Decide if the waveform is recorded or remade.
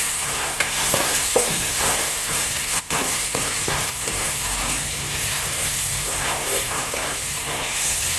remade